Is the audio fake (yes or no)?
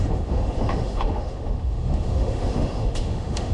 yes